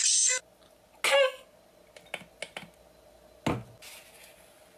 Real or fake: real